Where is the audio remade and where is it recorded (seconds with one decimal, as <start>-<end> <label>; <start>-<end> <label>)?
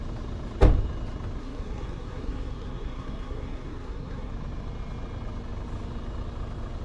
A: 0.0-1.4 recorded; 1.4-4.3 remade; 4.3-6.8 recorded